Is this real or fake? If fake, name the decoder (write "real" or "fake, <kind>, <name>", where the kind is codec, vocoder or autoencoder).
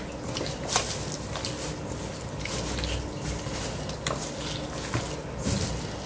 real